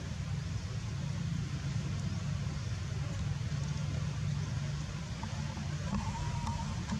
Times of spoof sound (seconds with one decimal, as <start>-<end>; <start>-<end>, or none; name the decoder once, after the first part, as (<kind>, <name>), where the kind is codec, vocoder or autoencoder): 3.8-6.0 (vocoder, BigVGAN v2)